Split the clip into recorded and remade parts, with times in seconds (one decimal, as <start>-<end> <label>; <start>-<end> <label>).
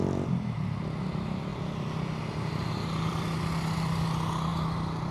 0.0-5.1 recorded